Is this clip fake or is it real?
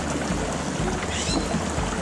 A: real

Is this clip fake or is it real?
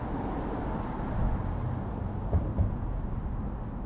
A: real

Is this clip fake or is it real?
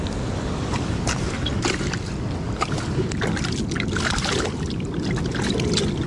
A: real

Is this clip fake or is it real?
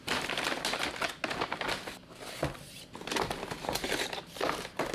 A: real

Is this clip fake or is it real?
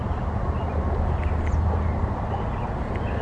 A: real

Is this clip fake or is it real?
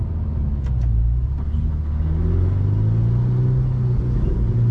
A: real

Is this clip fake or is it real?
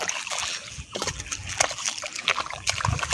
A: fake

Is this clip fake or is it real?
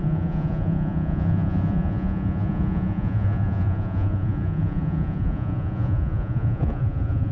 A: fake